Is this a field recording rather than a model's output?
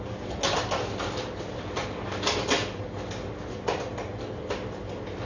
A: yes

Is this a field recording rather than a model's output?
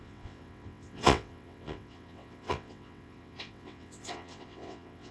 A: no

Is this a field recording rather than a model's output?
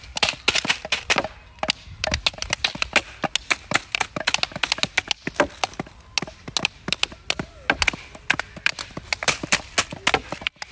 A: yes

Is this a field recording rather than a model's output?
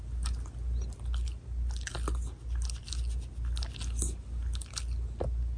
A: yes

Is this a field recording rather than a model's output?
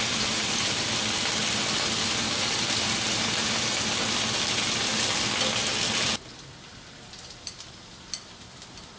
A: yes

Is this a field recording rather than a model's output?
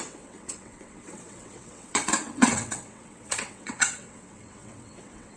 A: no